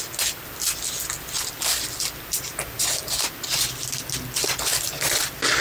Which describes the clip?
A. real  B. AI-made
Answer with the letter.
A